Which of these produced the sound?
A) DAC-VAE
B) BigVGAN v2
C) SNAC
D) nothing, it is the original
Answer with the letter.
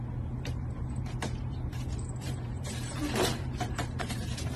B